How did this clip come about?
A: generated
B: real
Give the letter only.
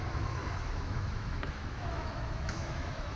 A